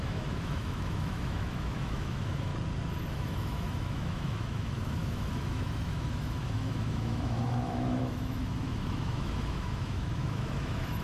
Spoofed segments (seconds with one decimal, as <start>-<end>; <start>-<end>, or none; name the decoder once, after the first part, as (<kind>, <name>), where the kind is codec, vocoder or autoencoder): 0.0-2.5 (autoencoder, DAC-VAE); 3.1-11.0